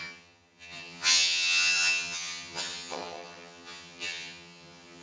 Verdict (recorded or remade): remade